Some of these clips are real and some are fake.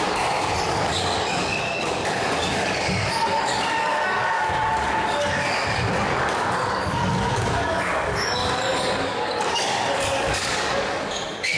fake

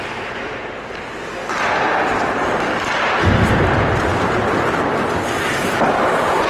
real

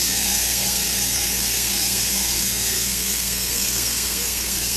fake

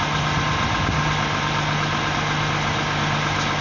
real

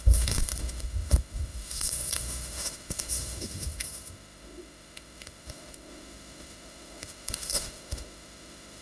fake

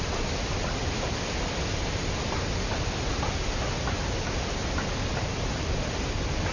real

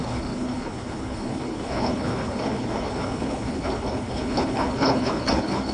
fake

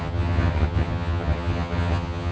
fake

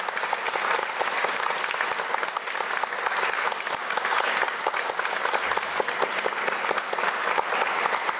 real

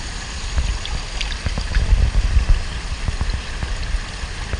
real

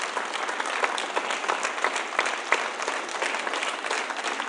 real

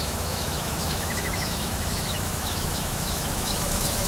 fake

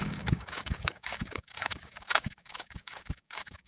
fake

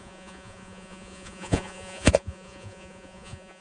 fake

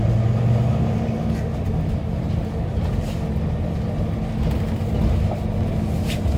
real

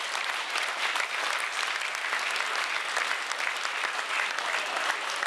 real